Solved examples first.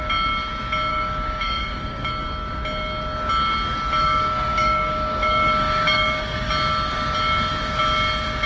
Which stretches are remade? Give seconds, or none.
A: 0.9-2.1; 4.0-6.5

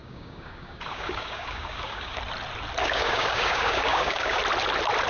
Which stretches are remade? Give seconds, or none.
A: 0.0-2.2; 2.8-4.4

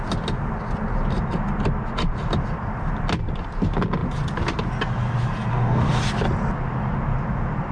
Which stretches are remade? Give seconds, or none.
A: 5.5-6.0

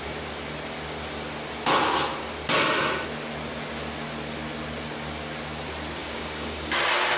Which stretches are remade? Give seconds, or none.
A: 6.0-6.8

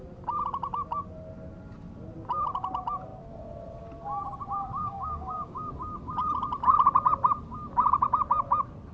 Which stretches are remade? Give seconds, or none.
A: 4.8-5.7

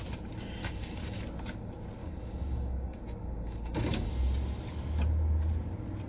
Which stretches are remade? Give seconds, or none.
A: 0.6-1.2; 2.0-4.1

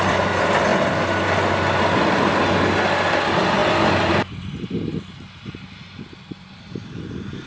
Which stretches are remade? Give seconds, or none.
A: none